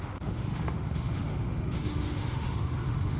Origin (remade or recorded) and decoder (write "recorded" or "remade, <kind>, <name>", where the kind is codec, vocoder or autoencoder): remade, autoencoder, DAC-VAE